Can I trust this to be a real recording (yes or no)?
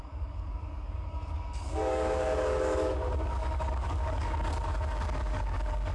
no